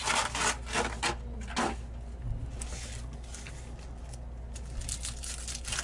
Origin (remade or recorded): recorded